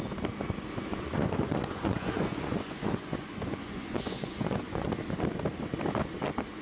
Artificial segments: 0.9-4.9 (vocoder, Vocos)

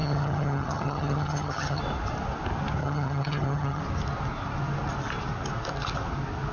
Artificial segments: 0.0-1.8 (vocoder, HiFi-GAN); 2.8-3.8

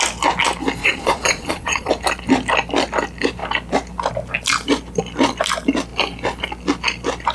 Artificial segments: 0.8-1.9 (vocoder, Vocos)